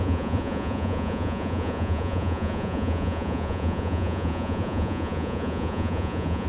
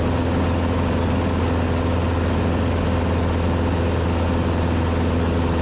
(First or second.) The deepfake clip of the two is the first